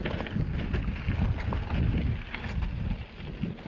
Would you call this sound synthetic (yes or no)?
no